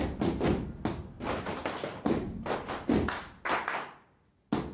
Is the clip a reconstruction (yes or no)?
no